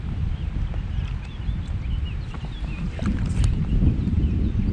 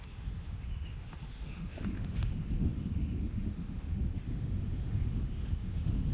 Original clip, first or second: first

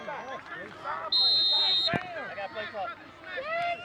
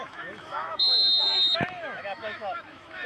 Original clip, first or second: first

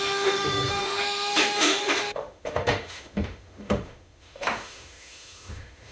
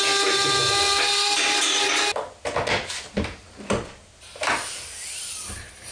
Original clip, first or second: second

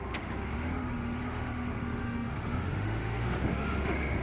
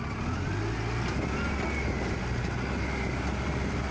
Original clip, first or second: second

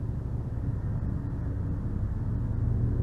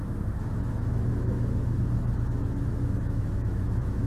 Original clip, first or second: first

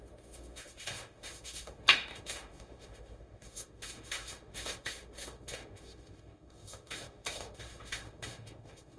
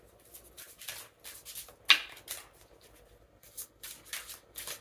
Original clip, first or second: second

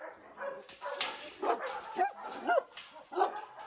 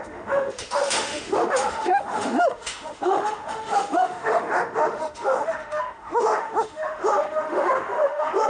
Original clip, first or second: first